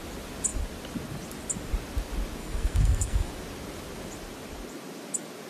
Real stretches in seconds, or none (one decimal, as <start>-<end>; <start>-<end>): 0.0-2.4; 3.3-5.5